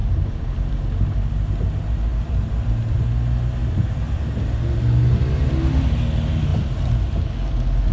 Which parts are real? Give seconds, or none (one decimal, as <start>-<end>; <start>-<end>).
0.7-2.1; 3.0-3.6; 4.2-7.9